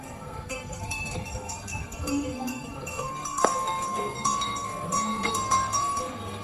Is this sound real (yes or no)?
no